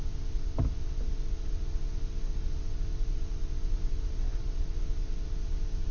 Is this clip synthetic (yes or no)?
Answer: no